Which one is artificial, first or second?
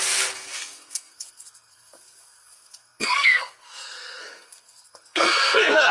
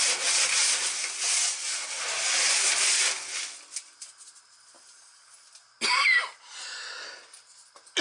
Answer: first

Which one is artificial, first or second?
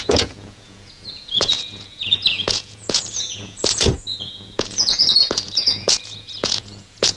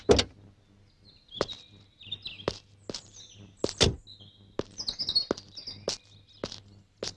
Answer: first